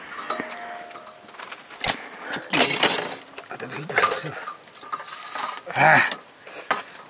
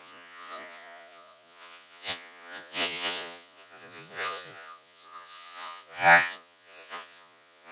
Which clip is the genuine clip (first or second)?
first